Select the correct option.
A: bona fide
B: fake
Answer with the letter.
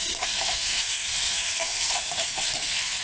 B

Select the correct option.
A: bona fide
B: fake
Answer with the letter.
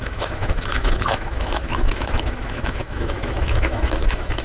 B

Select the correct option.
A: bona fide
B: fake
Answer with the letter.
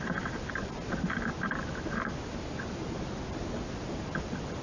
A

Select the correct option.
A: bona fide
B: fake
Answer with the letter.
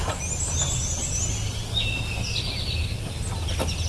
A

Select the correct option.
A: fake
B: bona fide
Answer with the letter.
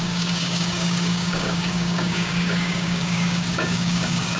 A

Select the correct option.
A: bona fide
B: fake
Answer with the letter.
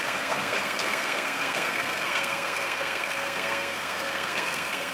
B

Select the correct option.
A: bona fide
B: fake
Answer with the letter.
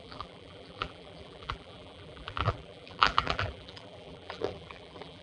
B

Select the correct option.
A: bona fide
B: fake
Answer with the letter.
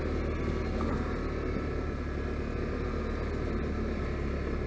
A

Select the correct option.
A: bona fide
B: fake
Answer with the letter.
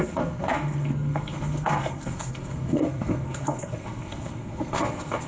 B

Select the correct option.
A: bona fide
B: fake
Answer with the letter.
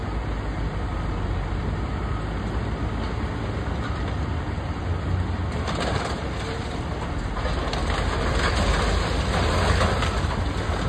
A